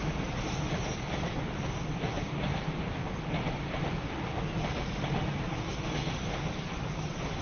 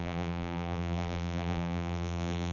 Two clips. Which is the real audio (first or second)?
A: first